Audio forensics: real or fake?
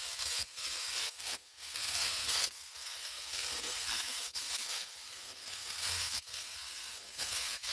fake